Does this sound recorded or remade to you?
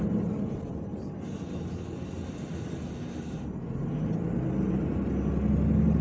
recorded